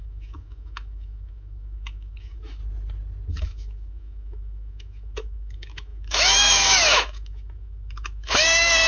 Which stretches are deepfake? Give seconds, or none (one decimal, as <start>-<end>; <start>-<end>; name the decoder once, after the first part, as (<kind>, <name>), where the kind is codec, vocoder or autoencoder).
0.0-2.6 (autoencoder, DAC-VAE); 3.3-8.9